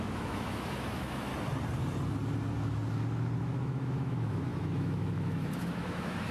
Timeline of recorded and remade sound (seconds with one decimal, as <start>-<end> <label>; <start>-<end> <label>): 0.0-1.3 remade; 1.3-3.4 recorded; 3.4-6.3 remade